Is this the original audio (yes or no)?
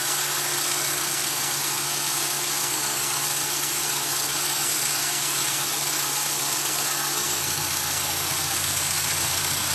no